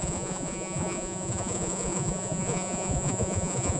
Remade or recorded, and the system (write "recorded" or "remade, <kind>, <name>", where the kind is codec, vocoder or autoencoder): remade, vocoder, Vocos